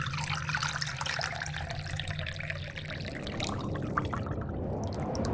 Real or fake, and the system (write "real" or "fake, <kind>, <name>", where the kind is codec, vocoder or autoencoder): real